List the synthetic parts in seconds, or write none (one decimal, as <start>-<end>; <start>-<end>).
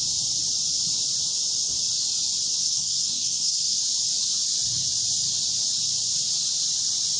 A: 2.6-3.8